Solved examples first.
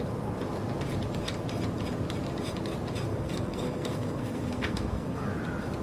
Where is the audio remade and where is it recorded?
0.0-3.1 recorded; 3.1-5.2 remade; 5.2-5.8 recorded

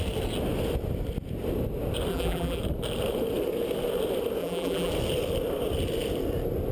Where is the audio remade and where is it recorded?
0.0-2.1 recorded; 2.1-2.6 remade; 2.6-4.4 recorded; 4.4-4.9 remade; 4.9-6.7 recorded

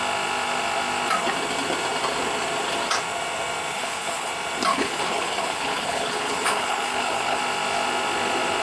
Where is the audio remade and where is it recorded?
0.0-3.7 recorded; 3.7-4.3 remade; 4.3-4.7 recorded; 4.7-7.4 remade; 7.4-8.6 recorded